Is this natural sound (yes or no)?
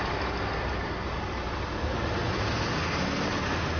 yes